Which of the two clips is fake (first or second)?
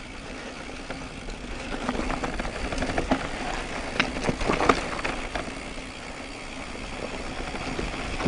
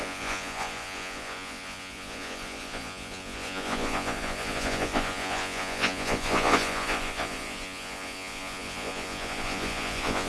second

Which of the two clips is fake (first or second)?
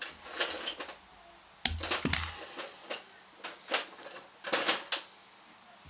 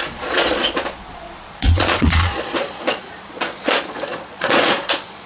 second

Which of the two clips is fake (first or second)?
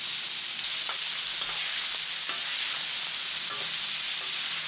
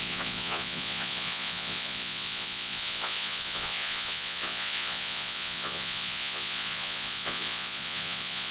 second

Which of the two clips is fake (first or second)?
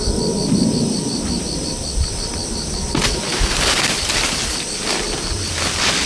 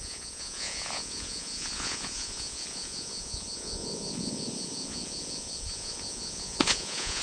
second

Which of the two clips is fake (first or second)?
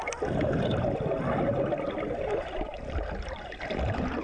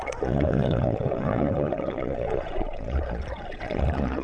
second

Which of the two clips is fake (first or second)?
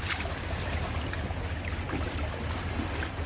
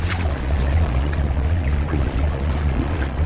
second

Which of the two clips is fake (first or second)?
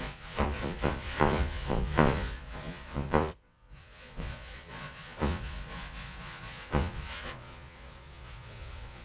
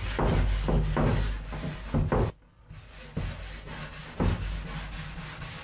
first